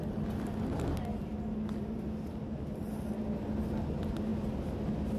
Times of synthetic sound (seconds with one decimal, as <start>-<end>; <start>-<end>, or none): none